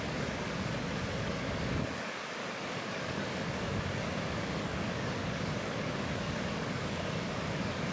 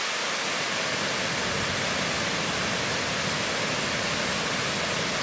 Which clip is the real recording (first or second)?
second